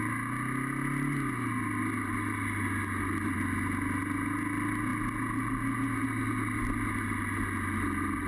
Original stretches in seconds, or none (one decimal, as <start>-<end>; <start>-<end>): 0.0-8.3